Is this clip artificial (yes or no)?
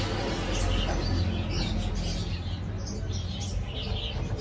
no